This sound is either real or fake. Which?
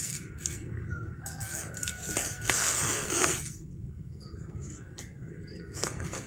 fake